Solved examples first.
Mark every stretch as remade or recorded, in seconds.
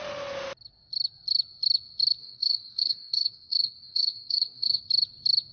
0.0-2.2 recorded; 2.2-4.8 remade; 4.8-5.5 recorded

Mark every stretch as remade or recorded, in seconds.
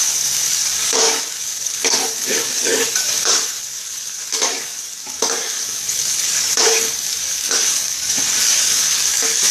0.0-9.5 remade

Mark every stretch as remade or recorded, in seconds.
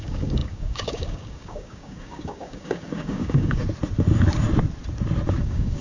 0.0-3.6 remade; 3.6-5.3 recorded; 5.3-5.8 remade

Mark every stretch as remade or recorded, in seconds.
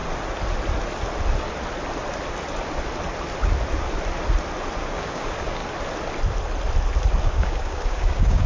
0.0-4.8 recorded; 4.8-5.6 remade; 5.6-7.2 recorded; 7.2-8.5 remade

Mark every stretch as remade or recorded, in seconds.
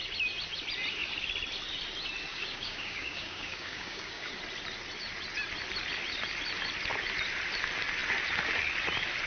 0.0-2.3 recorded; 2.3-4.3 remade; 4.3-9.3 recorded